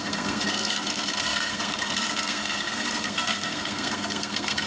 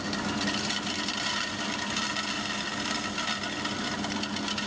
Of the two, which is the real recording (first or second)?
second